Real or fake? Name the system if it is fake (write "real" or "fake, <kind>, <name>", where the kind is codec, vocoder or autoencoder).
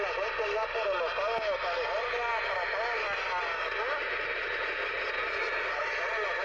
real